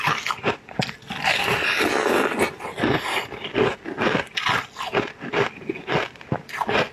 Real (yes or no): yes